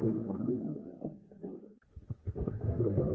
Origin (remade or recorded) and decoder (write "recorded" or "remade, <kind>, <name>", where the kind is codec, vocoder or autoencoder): remade, codec, SNAC